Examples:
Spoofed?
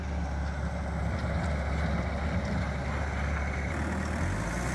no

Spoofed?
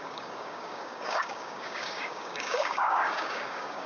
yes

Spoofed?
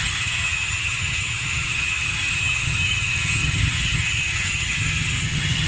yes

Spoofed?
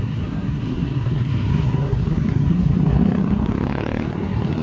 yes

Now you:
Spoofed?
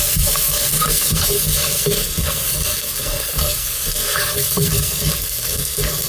yes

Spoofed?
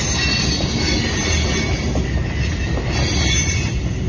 no